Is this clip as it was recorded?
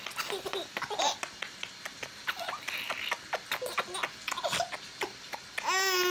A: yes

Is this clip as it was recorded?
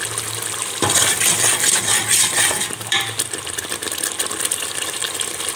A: no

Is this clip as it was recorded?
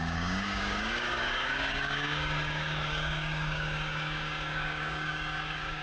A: no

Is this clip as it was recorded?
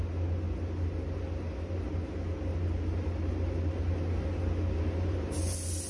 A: yes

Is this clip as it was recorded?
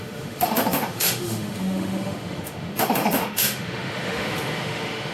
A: no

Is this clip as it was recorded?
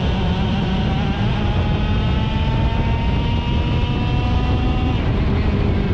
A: yes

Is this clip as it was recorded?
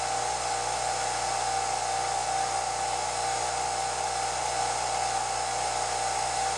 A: yes